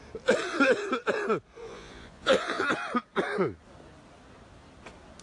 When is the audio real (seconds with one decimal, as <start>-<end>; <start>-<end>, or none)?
0.0-1.6; 2.7-5.2